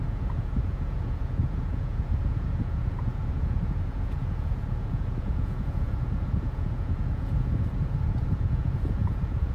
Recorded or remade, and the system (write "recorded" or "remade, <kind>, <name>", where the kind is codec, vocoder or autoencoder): remade, vocoder, Vocos